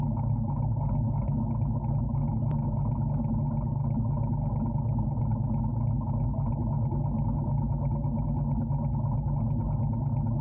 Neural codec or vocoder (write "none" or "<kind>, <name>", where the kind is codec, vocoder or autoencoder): none